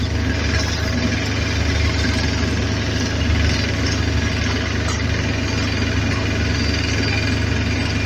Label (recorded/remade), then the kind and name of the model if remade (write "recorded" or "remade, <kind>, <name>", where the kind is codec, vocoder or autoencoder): recorded